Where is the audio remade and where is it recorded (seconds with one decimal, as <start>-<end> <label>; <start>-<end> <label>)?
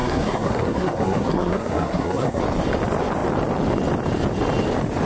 0.0-2.4 remade; 2.4-5.1 recorded